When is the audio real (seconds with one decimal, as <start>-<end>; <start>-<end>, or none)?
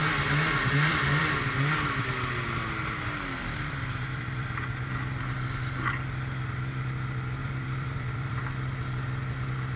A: 1.2-3.4; 4.6-7.4; 8.3-9.8